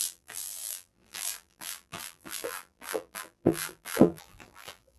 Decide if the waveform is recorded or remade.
remade